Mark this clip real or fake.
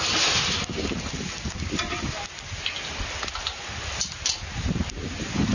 real